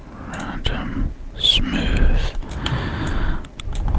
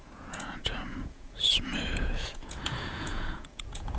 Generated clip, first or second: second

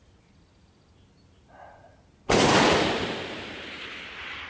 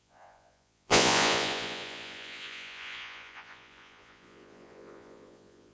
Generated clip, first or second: second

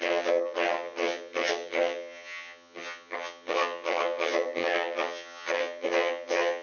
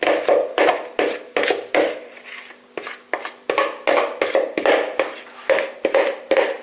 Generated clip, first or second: first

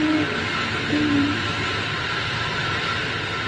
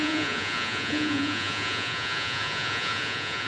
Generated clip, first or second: second